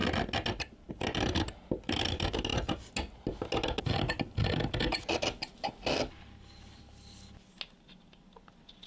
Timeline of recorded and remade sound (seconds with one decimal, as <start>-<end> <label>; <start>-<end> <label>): 0.0-8.9 recorded